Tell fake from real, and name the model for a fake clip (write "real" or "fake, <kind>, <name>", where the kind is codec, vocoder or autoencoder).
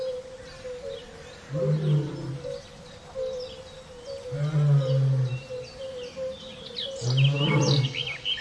real